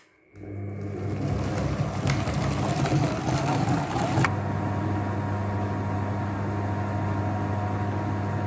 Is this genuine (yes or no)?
yes